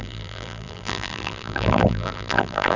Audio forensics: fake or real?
fake